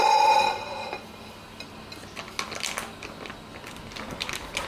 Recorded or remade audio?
recorded